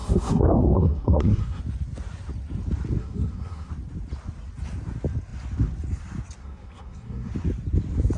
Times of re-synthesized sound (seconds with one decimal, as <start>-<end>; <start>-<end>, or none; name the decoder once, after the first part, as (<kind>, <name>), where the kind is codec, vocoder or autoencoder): 0.0-1.6 (codec, SNAC); 3.0-3.7; 6.4-7.3